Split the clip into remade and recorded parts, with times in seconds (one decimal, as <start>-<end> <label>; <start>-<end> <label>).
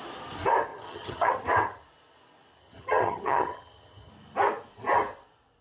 0.0-0.7 recorded; 0.7-1.3 remade; 1.3-2.6 recorded; 2.6-4.1 remade; 4.1-5.6 recorded